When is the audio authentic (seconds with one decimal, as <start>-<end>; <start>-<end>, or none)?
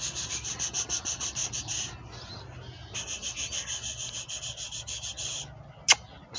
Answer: 0.0-6.4